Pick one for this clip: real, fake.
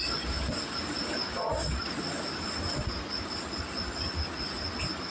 real